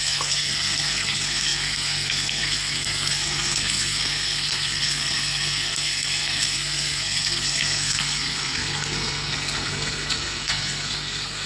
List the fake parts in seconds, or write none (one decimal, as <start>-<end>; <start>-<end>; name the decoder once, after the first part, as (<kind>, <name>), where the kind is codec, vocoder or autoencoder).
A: 0.0-11.5 (codec, SNAC)